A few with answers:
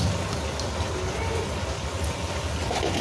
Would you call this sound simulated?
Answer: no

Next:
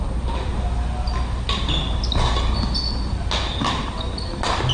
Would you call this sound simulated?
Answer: no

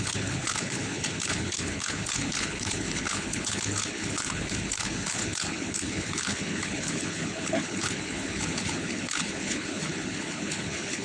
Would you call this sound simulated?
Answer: yes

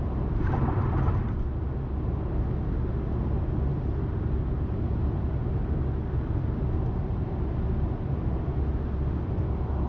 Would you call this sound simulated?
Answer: no